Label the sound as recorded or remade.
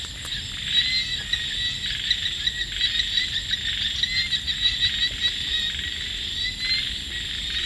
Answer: recorded